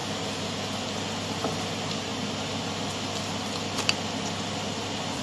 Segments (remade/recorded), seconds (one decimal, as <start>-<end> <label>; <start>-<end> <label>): 0.0-5.2 recorded